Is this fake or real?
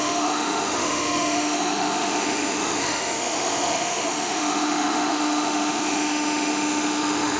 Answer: fake